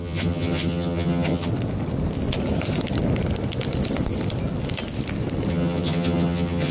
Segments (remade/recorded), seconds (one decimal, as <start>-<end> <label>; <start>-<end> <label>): 0.0-1.5 remade; 1.5-5.5 recorded; 5.5-6.7 remade